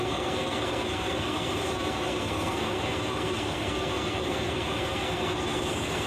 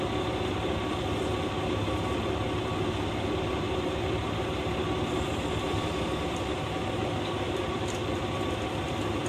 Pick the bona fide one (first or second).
second